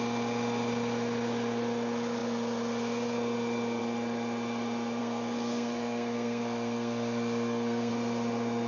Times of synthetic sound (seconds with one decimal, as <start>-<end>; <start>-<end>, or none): 5.0-7.9